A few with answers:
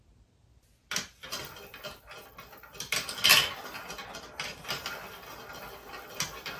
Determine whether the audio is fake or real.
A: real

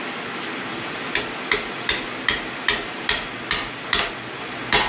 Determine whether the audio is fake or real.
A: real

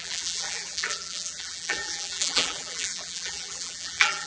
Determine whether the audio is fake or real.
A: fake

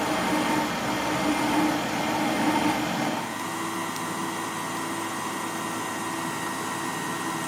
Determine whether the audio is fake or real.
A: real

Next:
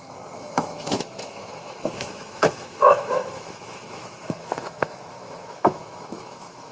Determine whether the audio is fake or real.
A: fake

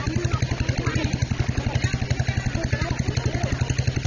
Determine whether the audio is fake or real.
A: real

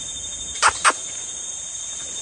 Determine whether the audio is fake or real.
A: fake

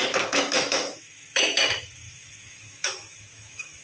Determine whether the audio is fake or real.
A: fake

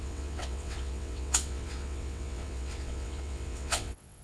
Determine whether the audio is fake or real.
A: fake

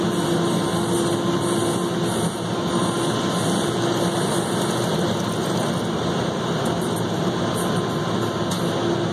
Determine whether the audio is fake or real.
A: real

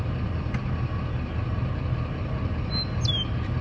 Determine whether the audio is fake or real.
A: real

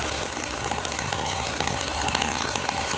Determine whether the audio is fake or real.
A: fake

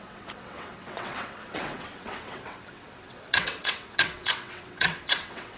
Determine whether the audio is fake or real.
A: fake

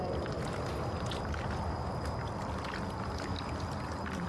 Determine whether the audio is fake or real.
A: real